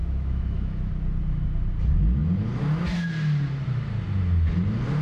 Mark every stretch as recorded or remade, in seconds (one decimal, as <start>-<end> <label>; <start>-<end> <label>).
0.0-0.9 remade; 0.9-5.0 recorded

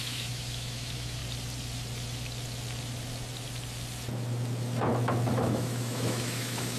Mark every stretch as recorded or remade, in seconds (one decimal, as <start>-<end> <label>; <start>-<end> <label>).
0.0-1.2 remade; 1.2-5.3 recorded; 5.3-6.8 remade

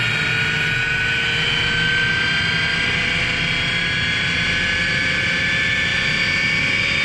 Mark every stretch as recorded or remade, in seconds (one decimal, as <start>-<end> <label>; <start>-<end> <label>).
0.0-7.0 recorded

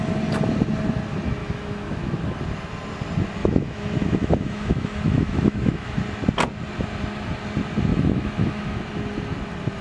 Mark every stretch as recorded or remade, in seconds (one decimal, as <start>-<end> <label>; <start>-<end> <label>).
0.0-1.4 recorded; 1.4-2.0 remade; 2.0-3.4 recorded; 3.4-6.0 remade; 6.0-7.9 recorded; 7.9-8.8 remade; 8.8-9.8 recorded